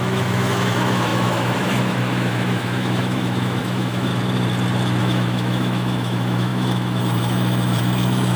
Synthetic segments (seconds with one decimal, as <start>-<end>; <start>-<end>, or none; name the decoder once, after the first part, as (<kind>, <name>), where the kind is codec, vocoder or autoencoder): 0.0-4.1 (autoencoder, DAC-VAE); 5.0-8.4

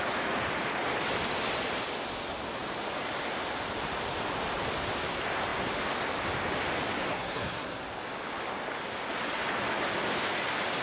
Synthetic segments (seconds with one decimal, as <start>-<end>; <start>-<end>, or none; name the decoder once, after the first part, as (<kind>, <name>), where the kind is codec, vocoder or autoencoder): 7.1-7.8 (codec, SNAC)

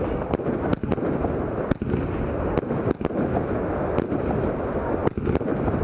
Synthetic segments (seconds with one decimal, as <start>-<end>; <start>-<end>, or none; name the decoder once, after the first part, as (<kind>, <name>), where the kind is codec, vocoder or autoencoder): 5.0-5.8 (vocoder, BigVGAN v2)

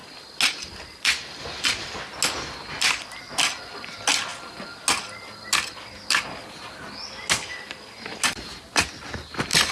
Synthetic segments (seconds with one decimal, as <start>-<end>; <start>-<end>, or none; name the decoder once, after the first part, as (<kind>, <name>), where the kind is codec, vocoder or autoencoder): none